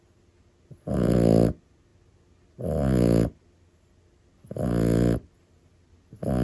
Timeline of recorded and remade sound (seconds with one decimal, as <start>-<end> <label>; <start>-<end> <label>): 0.0-6.4 recorded